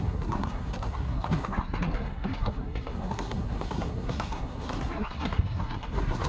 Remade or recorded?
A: remade